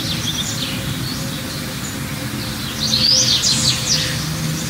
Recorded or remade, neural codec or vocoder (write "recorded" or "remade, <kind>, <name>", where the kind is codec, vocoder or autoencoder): recorded